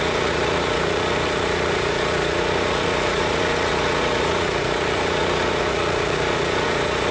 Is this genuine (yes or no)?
no